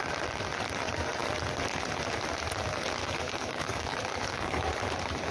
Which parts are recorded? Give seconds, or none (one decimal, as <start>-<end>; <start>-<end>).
0.0-3.0; 4.8-5.3